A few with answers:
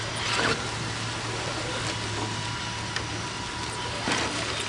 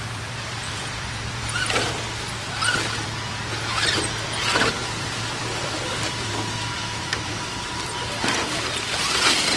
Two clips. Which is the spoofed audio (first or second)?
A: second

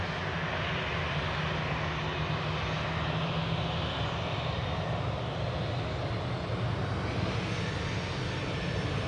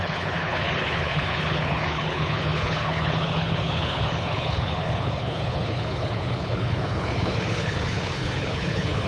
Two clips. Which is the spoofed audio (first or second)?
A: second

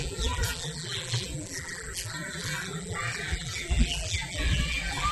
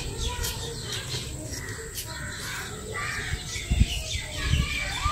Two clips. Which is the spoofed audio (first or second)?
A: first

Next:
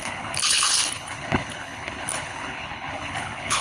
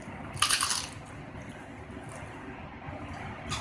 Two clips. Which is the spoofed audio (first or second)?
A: first